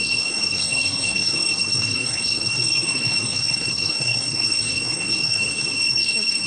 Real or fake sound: fake